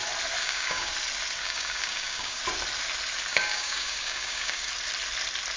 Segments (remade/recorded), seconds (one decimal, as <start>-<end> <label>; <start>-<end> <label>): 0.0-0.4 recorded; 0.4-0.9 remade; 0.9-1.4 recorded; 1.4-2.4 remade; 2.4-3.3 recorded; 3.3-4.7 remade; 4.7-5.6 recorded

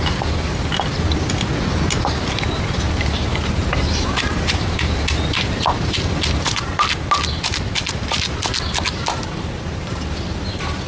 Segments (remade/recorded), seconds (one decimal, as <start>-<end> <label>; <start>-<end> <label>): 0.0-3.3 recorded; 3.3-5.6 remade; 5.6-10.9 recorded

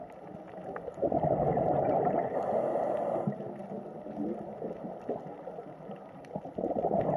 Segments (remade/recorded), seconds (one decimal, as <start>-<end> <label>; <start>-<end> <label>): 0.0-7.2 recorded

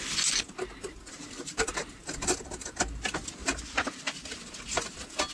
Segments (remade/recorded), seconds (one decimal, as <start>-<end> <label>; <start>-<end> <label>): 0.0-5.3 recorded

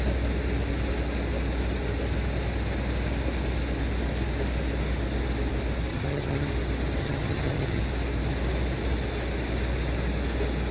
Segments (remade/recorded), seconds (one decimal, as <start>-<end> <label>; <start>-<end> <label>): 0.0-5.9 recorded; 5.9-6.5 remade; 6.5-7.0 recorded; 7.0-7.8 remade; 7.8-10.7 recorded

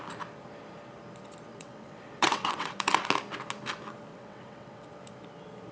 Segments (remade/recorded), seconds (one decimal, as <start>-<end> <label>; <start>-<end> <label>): 0.0-1.5 recorded; 1.5-3.0 remade; 3.0-4.1 recorded; 4.1-4.9 remade; 4.9-5.7 recorded

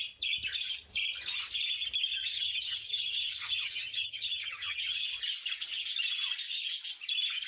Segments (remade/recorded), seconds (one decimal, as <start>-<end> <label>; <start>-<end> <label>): 0.0-2.2 recorded; 2.2-5.0 remade; 5.0-7.5 recorded

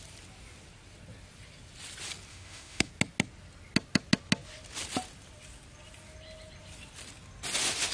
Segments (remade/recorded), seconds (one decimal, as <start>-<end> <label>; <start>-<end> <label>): 0.0-2.3 recorded; 2.3-2.9 remade; 2.9-7.9 recorded